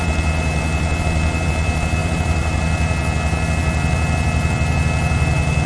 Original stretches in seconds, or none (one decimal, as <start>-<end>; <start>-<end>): 0.0-2.0; 2.6-5.7